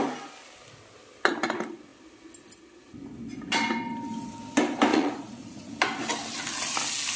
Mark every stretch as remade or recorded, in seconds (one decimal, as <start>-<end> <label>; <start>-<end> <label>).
0.0-4.9 recorded; 4.9-5.7 remade; 5.7-7.2 recorded